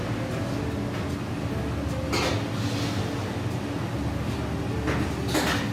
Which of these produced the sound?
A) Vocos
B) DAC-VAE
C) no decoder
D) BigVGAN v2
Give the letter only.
C